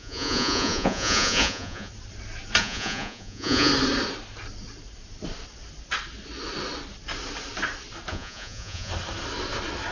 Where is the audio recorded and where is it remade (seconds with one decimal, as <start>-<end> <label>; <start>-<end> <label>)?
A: 0.0-1.9 remade; 1.9-2.6 recorded; 2.6-3.7 remade; 3.7-8.1 recorded; 8.1-8.9 remade; 8.9-9.9 recorded